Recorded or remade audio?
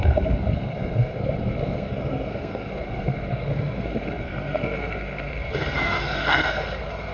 remade